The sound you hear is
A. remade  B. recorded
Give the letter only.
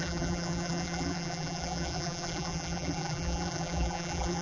A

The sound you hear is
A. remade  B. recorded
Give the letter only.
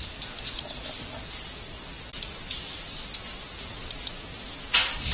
B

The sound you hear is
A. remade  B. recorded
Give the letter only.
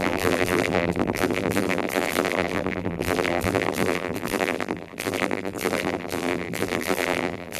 A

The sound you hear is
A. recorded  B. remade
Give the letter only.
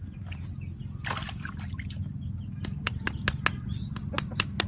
A